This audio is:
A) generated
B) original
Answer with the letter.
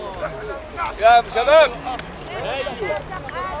B